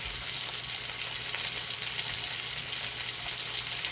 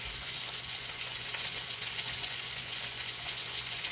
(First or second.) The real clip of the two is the first